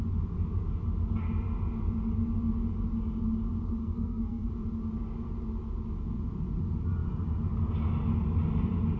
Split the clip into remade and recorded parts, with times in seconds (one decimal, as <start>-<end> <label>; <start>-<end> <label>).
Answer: 0.0-3.8 recorded; 3.8-4.5 remade; 4.5-9.0 recorded